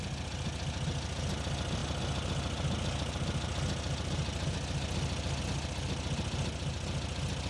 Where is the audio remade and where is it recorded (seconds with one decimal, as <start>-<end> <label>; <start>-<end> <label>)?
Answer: 0.0-7.5 recorded